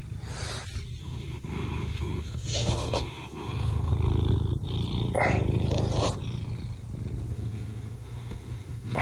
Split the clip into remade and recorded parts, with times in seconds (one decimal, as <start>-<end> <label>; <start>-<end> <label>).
0.0-1.0 recorded; 1.0-3.9 remade; 3.9-7.3 recorded; 7.3-9.0 remade